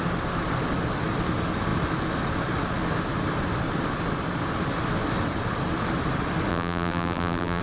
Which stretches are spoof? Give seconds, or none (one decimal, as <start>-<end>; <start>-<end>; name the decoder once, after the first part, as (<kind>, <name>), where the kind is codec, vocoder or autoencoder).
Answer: 6.5-7.6 (vocoder, BigVGAN v2)